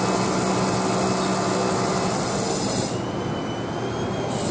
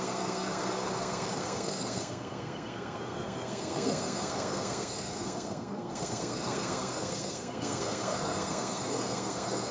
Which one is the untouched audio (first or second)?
first